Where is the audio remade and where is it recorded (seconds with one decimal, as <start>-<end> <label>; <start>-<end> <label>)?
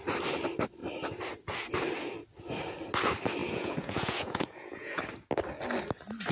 0.0-3.4 recorded; 3.4-5.0 remade; 5.0-6.3 recorded